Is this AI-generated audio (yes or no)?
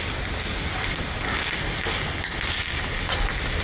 no